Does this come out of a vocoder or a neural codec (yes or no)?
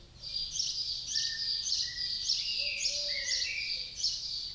no